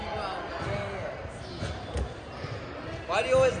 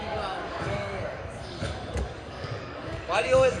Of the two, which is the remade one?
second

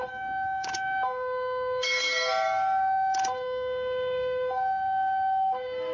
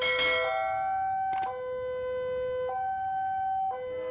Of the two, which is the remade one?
first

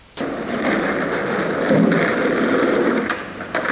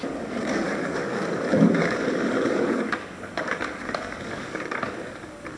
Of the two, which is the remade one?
second